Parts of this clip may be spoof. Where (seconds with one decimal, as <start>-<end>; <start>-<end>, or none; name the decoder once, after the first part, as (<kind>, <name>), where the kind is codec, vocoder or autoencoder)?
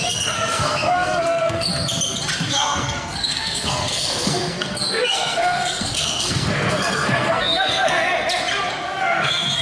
0.0-1.7 (codec, SNAC); 2.5-8.1; 9.0-9.6